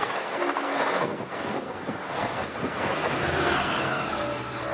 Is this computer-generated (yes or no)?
yes